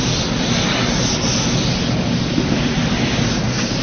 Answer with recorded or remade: recorded